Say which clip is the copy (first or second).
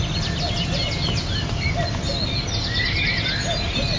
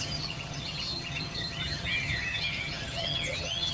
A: second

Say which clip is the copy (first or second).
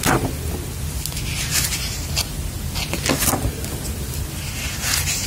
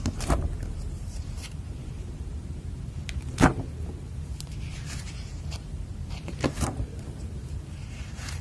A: second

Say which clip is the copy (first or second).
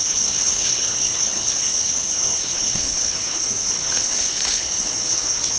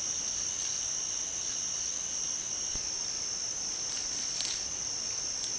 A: first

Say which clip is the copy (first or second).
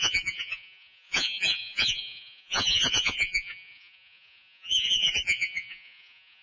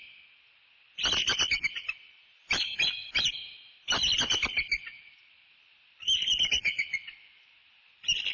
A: first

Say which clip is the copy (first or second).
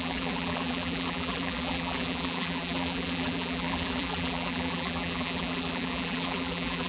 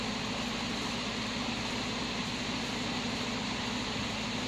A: first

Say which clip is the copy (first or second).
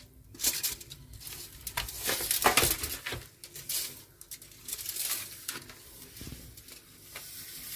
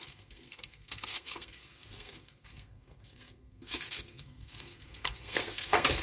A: second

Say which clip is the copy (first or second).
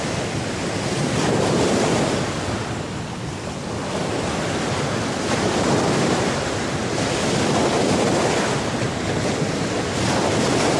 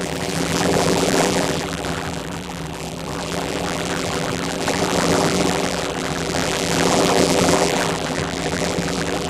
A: second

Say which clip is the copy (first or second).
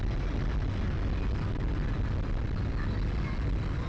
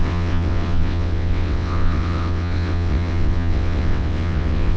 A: second